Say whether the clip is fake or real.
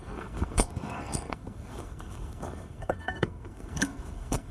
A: fake